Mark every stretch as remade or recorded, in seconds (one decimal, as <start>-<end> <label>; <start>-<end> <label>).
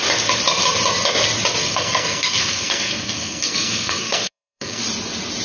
0.0-1.6 recorded; 1.6-4.8 remade; 4.8-5.4 recorded